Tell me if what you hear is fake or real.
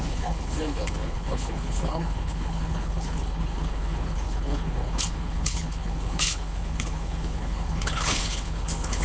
fake